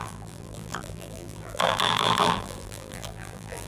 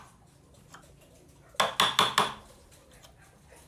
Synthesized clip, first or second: first